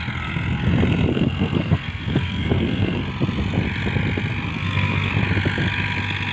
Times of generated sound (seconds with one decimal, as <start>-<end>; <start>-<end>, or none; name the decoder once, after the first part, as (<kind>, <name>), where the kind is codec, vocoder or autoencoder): 1.1-3.0 (codec, SNAC); 4.5-5.1